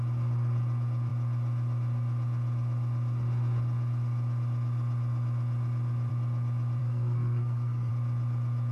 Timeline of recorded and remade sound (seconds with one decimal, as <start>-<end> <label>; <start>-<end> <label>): 0.0-6.8 recorded; 6.8-7.9 remade; 7.9-8.7 recorded